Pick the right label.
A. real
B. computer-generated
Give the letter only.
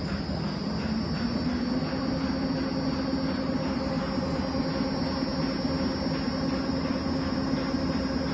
A